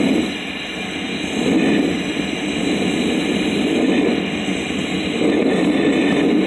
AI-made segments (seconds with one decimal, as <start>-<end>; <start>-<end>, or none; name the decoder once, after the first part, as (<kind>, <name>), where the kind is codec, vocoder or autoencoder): none